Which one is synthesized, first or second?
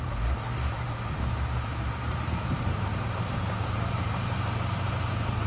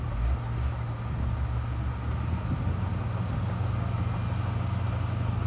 first